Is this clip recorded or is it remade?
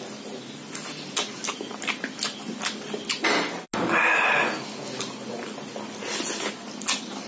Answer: recorded